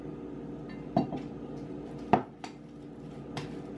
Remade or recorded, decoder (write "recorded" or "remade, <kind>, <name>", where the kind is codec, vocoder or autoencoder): recorded